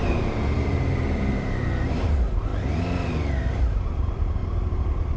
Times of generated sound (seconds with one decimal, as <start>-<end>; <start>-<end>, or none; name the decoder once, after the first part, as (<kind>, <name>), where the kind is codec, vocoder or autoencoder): 0.0-2.5 (vocoder, BigVGAN v2); 3.7-5.2